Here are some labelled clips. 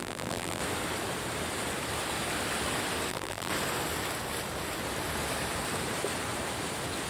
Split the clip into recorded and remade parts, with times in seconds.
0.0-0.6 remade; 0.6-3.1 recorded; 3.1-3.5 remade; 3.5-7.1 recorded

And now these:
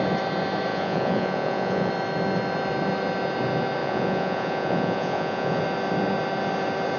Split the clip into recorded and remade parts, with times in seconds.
0.0-0.7 recorded; 0.7-1.9 remade; 1.9-3.8 recorded; 3.8-5.6 remade; 5.6-7.0 recorded